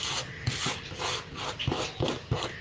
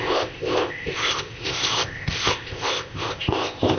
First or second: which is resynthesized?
second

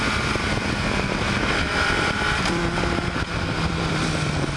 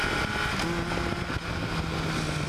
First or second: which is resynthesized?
first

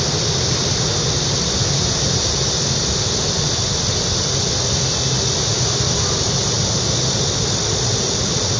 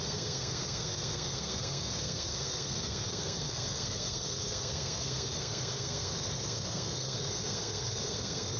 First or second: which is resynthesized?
second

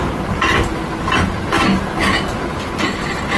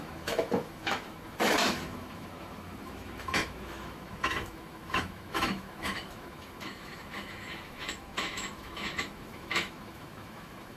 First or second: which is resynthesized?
second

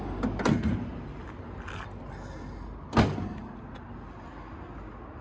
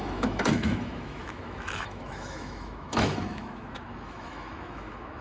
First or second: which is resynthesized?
second